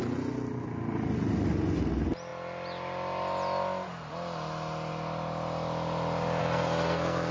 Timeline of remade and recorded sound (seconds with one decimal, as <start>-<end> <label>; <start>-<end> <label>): 0.0-6.4 recorded; 6.4-7.3 remade